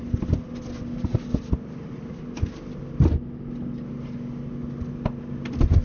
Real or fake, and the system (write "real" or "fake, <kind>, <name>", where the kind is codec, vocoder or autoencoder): real